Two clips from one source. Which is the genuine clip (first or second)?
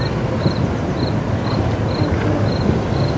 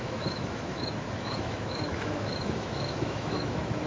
first